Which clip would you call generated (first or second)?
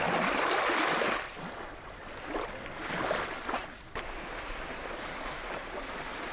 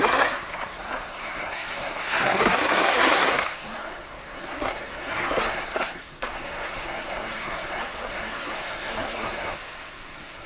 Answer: second